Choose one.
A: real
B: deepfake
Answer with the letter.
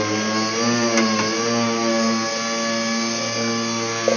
A